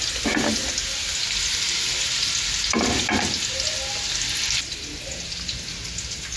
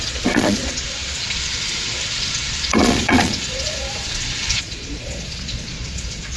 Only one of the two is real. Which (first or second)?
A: first